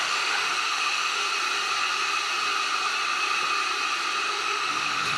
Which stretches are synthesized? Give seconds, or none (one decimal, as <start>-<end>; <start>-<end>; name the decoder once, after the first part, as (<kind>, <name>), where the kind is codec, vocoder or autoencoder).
0.0-1.2 (autoencoder, DAC-VAE); 4.3-5.2